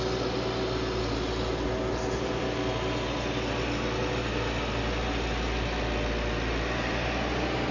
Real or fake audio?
real